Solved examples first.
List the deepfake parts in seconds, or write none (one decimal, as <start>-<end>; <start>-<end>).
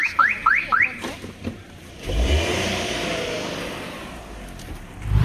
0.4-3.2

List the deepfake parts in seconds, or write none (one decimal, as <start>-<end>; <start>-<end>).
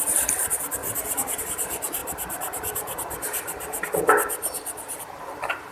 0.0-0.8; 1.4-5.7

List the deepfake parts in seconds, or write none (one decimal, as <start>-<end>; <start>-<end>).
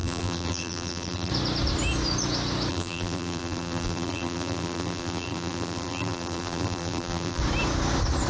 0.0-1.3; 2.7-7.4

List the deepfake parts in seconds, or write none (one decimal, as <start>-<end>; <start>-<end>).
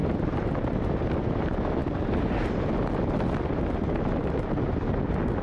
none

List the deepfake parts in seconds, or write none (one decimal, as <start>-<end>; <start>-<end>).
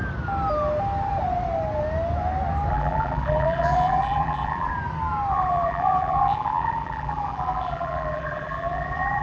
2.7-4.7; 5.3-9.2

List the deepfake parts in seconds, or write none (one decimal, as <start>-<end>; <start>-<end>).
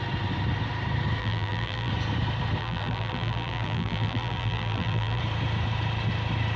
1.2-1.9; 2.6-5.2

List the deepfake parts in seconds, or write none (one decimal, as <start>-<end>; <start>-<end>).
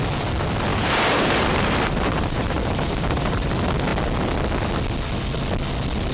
0.7-3.5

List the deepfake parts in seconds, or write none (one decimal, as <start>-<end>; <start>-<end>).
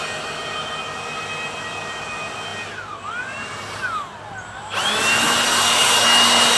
none